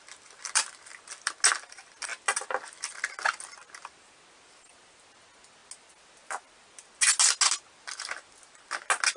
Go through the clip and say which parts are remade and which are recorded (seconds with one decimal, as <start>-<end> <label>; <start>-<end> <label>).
0.0-9.2 recorded